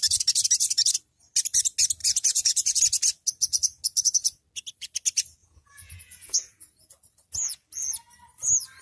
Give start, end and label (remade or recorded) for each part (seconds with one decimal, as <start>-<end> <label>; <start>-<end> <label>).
0.0-2.0 recorded; 2.0-2.8 remade; 2.8-5.4 recorded; 5.4-6.9 remade; 6.9-8.8 recorded